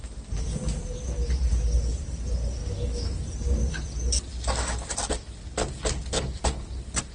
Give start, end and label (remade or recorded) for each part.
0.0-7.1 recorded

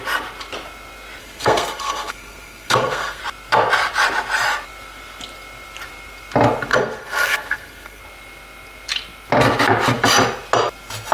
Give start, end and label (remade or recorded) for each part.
0.0-1.2 recorded; 1.2-3.2 remade; 3.2-6.7 recorded; 6.7-8.0 remade; 8.0-11.1 recorded

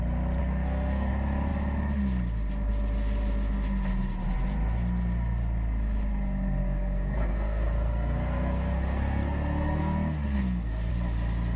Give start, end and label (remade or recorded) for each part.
0.0-0.4 recorded; 0.4-1.1 remade; 1.1-6.6 recorded; 6.6-10.9 remade; 10.9-11.6 recorded

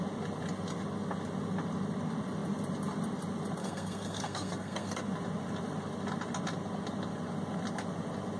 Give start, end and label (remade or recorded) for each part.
0.0-3.6 recorded; 3.6-5.0 remade; 5.0-8.4 recorded